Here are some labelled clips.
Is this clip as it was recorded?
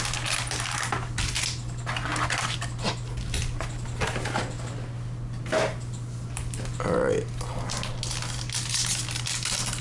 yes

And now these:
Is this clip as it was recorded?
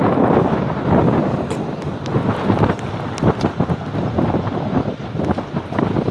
no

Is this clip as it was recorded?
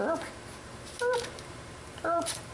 no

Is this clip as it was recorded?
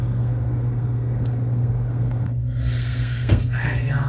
no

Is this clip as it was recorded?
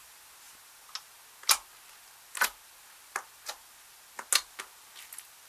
yes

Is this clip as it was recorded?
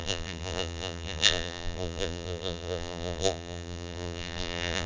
no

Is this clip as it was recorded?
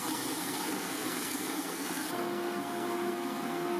no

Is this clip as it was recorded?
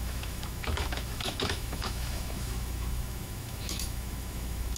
no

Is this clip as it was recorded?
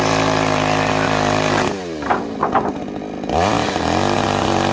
yes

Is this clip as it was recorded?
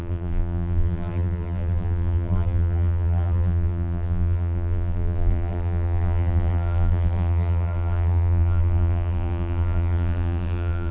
no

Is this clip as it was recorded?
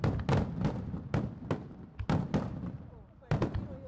yes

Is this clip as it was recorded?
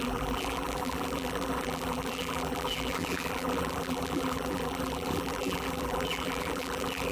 no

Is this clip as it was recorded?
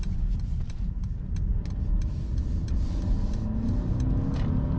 yes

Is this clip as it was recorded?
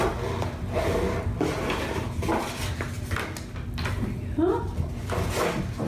yes